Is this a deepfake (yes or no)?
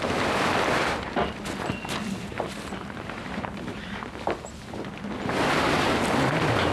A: no